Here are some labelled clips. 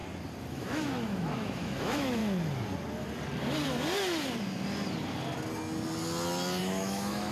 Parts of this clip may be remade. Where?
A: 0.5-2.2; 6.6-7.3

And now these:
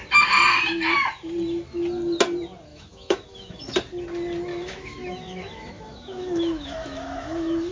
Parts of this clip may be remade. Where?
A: 2.7-3.6; 4.5-7.7

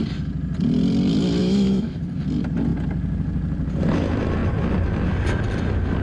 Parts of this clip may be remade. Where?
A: 1.4-2.0

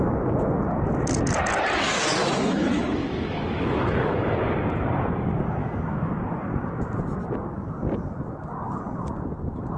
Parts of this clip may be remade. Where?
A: 2.2-4.4; 5.6-6.1

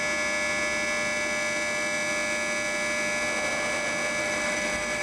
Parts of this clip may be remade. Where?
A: 4.2-5.0